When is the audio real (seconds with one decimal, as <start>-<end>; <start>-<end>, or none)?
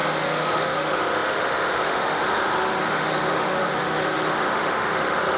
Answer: none